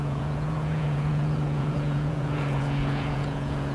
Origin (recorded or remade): remade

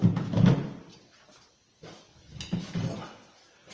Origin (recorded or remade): recorded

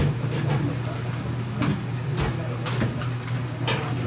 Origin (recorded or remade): recorded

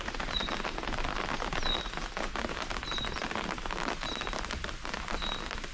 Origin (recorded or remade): recorded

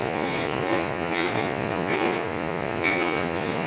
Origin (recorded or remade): remade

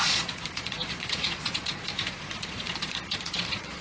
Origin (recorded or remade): remade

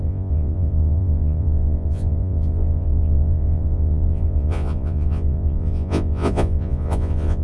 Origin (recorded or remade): remade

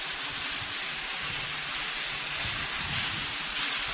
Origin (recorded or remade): recorded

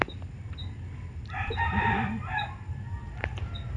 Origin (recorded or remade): recorded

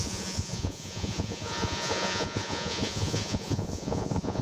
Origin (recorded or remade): remade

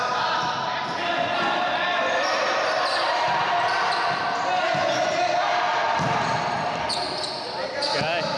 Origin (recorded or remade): recorded